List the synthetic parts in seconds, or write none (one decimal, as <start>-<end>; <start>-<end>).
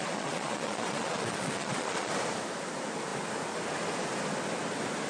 0.0-2.1